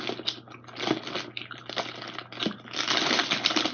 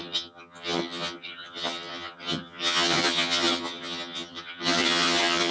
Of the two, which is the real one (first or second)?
first